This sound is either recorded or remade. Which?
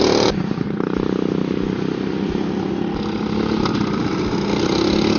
recorded